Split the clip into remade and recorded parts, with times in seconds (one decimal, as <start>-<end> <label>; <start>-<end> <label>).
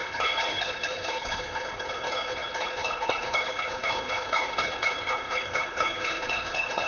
0.0-6.9 remade